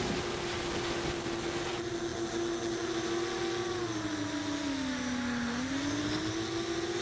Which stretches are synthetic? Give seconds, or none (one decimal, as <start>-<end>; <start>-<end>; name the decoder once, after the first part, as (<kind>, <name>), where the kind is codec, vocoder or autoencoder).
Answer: none